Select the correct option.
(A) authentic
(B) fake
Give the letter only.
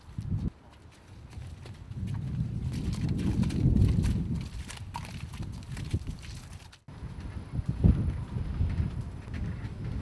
A